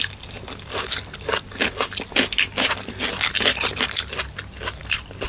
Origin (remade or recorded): recorded